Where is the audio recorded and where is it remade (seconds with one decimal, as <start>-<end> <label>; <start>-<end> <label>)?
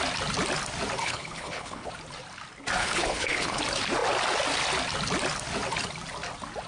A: 0.0-1.0 recorded; 1.0-1.9 remade; 1.9-2.8 recorded; 2.8-3.6 remade; 3.6-6.7 recorded